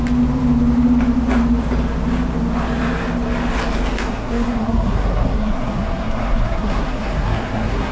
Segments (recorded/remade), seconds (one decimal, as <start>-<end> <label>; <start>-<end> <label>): 0.0-4.1 recorded; 4.1-7.9 remade